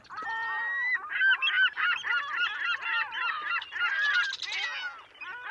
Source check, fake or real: real